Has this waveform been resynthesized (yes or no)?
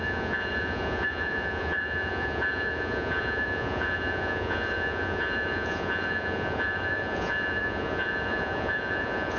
yes